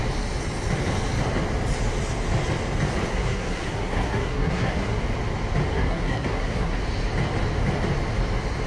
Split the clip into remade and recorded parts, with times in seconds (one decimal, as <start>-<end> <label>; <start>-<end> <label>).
0.0-3.1 recorded; 3.1-5.0 remade; 5.0-5.7 recorded; 5.7-6.8 remade; 6.8-8.7 recorded